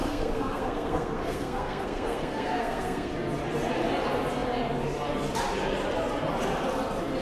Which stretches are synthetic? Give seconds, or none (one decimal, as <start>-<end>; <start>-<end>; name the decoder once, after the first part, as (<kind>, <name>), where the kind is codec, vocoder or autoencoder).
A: 0.0-3.1 (codec, SNAC)